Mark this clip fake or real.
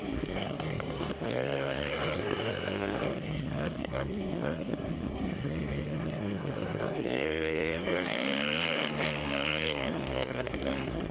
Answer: fake